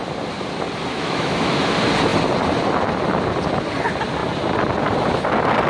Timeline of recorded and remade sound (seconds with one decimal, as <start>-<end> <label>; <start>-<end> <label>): 0.0-0.9 recorded; 0.9-1.7 remade; 1.7-5.7 recorded